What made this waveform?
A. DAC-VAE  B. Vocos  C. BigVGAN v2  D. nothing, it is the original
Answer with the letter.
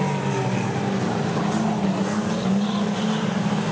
D